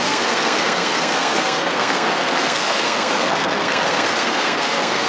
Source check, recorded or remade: remade